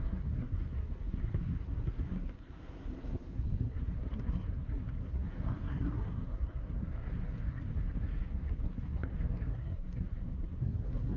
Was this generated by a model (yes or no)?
yes